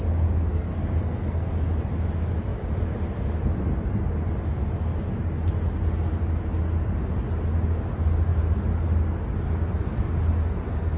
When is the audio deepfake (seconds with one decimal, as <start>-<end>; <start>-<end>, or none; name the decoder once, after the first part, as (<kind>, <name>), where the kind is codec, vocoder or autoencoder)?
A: 0.5-1.5 (codec, SNAC)